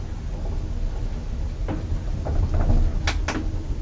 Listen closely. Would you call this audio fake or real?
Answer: real